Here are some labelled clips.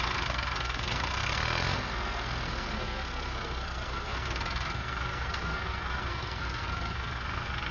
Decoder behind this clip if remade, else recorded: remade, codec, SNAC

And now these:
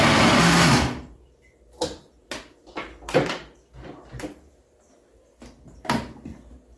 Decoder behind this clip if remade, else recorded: recorded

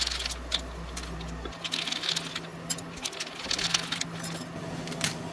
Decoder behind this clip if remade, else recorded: recorded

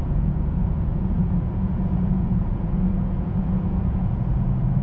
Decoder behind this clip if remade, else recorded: remade, vocoder, Vocos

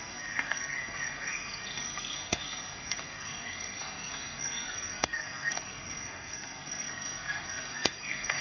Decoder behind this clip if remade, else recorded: remade, codec, SNAC